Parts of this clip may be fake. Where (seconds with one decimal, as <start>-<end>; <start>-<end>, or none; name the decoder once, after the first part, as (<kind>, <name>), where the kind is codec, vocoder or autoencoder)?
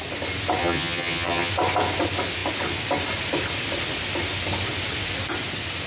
0.6-1.5 (vocoder, HiFi-GAN)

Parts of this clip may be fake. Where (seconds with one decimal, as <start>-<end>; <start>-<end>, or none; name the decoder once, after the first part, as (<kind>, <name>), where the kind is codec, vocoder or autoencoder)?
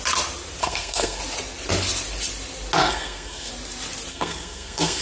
0.6-1.2 (codec, SNAC); 2.8-3.5; 4.1-5.0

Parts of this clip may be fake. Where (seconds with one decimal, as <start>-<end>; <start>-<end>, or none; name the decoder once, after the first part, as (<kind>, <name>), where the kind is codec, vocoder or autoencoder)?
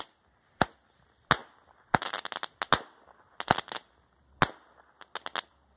none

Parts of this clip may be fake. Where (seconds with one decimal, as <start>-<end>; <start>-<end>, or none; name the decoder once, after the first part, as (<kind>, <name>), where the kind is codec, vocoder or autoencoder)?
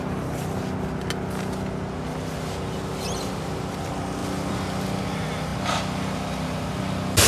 none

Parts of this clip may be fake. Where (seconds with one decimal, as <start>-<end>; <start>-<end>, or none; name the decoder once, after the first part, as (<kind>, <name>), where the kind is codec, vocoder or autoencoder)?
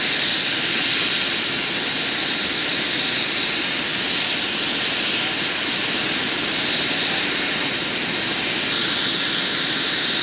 2.7-5.9 (vocoder, BigVGAN v2)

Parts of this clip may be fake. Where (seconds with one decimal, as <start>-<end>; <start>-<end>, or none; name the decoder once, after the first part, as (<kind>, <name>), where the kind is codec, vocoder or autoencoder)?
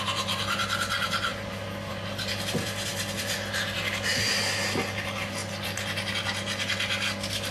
none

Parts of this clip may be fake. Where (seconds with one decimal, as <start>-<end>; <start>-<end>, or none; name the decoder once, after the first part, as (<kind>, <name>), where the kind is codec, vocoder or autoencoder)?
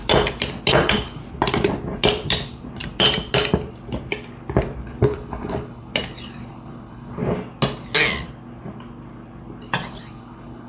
0.7-1.2 (codec, HILCodec); 5.0-5.9; 6.5-7.2; 9.9-10.7